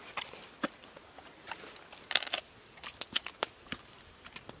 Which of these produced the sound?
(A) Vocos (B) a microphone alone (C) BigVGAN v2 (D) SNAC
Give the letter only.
B